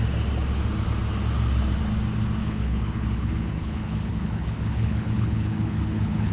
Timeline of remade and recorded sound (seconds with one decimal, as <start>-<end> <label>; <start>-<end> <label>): 0.0-2.4 recorded; 2.4-6.3 remade